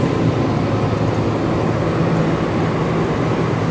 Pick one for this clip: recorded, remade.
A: recorded